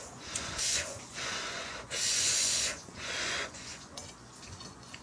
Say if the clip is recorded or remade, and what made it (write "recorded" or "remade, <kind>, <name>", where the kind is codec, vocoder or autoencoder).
remade, vocoder, Vocos